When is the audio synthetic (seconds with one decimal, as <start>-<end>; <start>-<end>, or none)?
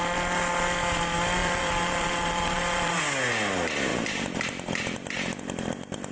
1.4-3.0